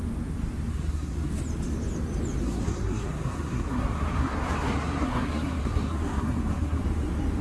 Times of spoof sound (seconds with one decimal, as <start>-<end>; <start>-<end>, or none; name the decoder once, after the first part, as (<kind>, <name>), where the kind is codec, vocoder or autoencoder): 0.7-1.3 (codec, SNAC); 2.4-6.8